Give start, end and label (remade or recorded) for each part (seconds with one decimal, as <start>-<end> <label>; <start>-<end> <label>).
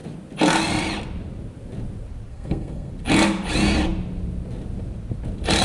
0.0-2.3 recorded; 2.3-2.9 remade; 2.9-5.6 recorded